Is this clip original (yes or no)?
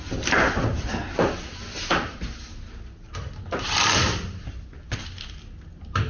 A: yes